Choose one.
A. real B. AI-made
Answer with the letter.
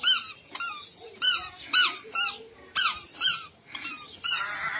A